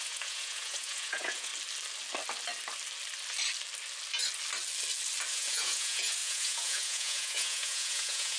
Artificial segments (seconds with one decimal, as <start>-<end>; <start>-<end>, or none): 0.0-1.5; 5.3-8.4